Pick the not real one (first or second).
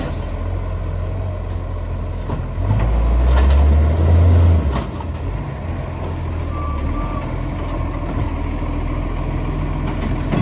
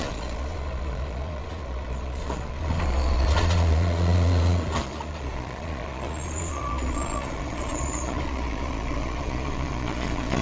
second